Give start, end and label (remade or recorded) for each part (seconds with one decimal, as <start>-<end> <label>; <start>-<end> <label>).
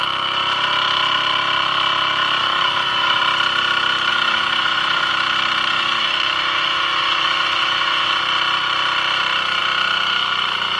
0.0-2.4 recorded; 2.4-3.2 remade; 3.2-4.1 recorded; 4.1-5.1 remade; 5.1-5.7 recorded; 5.7-8.2 remade; 8.2-10.8 recorded